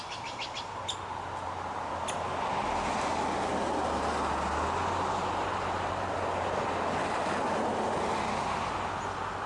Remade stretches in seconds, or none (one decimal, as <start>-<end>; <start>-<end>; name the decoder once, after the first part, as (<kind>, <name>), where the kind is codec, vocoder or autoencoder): 4.8-6.3 (vocoder, BigVGAN v2)